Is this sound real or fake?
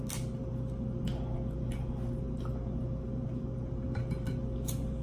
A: real